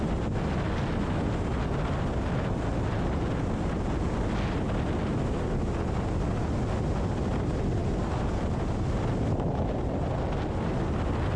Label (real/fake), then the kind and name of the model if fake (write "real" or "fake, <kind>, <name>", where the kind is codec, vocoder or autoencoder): real